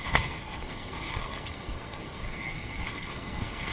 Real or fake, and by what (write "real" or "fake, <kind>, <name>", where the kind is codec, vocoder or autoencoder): fake, codec, SNAC